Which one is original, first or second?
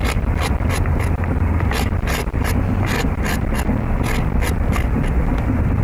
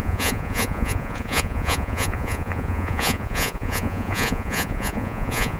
first